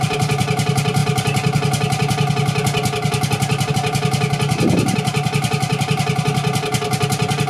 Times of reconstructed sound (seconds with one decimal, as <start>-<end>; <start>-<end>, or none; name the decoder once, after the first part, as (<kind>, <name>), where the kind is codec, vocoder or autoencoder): none